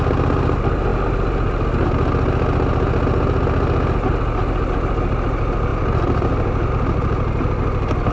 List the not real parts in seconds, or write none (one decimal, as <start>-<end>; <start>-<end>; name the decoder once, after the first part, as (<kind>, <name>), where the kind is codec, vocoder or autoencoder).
none